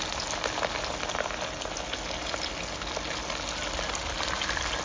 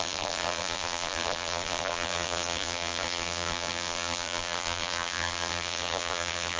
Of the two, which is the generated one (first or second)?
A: second